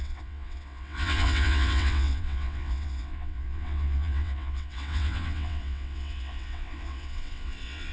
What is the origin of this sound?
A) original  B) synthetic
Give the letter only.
B